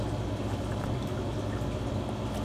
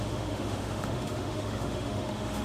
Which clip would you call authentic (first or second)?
first